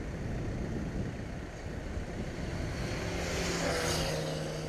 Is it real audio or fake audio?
real